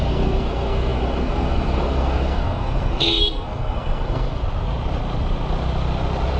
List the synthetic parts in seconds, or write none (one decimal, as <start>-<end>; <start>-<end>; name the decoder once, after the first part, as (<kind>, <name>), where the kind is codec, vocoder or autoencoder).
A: 0.0-4.4 (codec, SNAC)